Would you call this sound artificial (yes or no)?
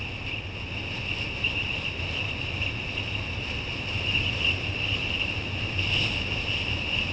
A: no